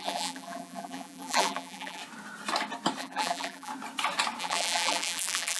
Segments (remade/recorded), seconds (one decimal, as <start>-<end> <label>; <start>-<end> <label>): 0.0-2.0 remade; 2.0-3.0 recorded; 3.0-3.7 remade; 3.7-4.4 recorded; 4.4-5.6 remade